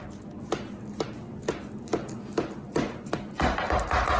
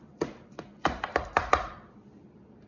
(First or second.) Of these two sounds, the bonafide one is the first